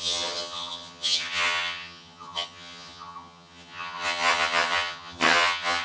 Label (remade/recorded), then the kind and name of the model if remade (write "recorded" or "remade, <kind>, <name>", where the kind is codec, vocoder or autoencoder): remade, vocoder, HiFi-GAN